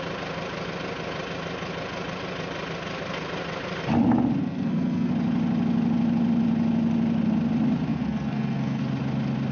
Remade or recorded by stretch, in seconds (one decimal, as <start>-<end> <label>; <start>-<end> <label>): 0.0-4.4 recorded; 4.4-5.1 remade; 5.1-7.9 recorded; 7.9-8.8 remade; 8.8-9.5 recorded